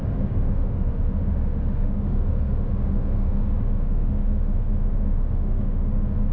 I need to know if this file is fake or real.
fake